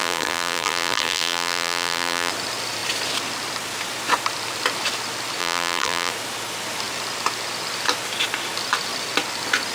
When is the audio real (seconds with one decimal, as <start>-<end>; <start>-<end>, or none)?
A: 2.3-5.4; 6.1-9.7